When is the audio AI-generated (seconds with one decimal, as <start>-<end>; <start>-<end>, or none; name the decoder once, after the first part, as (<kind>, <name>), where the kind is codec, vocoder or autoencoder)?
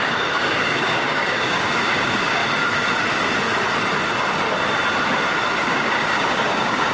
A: 0.0-2.4 (codec, DAC); 5.7-6.9